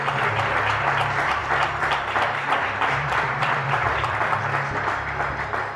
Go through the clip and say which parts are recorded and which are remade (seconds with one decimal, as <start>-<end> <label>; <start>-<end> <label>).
0.0-1.4 recorded; 1.4-4.4 remade; 4.4-5.8 recorded